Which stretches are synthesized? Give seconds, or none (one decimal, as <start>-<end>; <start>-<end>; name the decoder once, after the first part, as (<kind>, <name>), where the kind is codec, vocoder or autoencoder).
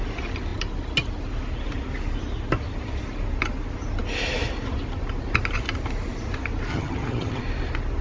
6.7-7.4 (vocoder, HiFi-GAN)